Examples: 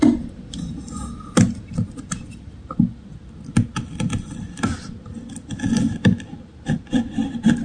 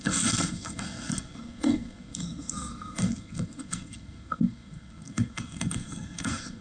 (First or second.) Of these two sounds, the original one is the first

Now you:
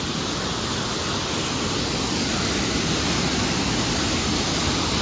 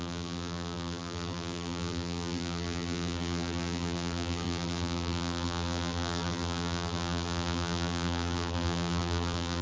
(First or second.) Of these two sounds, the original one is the first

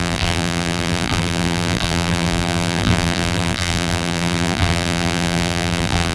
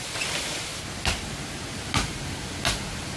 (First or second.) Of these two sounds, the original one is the second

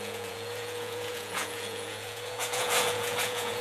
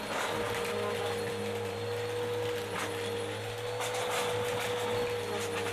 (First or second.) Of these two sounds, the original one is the second